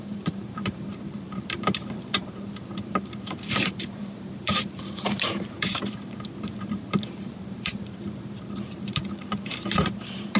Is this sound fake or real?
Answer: fake